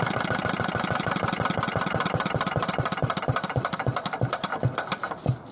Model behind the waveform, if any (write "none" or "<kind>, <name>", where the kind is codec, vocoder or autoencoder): none